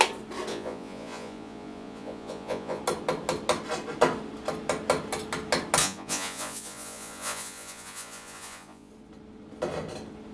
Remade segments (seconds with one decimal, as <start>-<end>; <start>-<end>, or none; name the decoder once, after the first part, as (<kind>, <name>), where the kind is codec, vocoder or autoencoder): 0.5-2.8 (vocoder, Vocos); 5.8-8.9